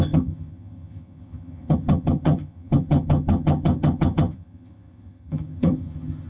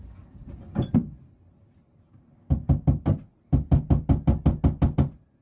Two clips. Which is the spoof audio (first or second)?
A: first